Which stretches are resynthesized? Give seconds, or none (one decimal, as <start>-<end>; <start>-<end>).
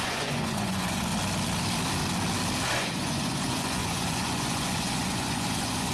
0.0-1.1; 2.8-5.9